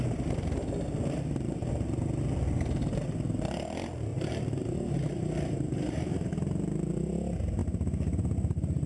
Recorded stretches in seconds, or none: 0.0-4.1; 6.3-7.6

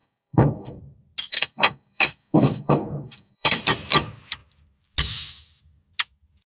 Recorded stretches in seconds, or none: 0.8-1.3; 3.6-6.6

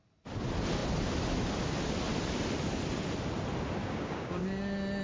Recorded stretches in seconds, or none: 0.0-3.8; 4.4-5.0